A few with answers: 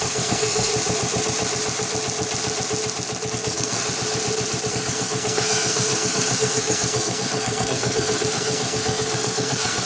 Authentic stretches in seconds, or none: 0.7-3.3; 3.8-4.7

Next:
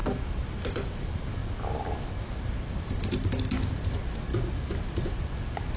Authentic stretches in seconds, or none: 0.0-5.8

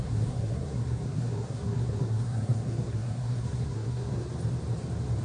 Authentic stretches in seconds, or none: 4.3-5.2

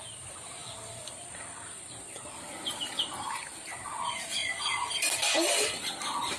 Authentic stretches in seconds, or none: 0.0-0.6; 3.5-4.4; 5.9-6.4